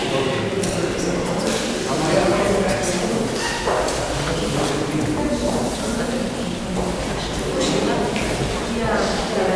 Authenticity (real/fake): real